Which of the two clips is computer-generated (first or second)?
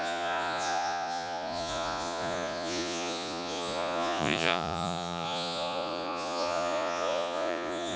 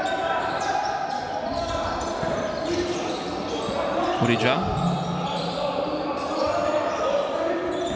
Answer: first